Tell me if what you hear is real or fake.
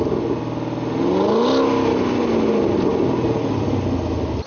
real